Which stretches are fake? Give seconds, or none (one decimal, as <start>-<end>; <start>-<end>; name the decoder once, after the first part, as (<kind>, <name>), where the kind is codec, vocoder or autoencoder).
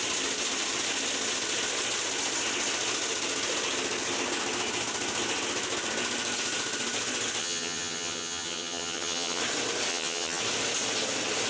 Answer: 7.4-9.4 (vocoder, HiFi-GAN); 9.9-10.4